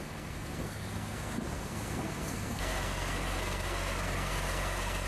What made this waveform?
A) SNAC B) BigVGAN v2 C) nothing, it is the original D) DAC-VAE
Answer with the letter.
A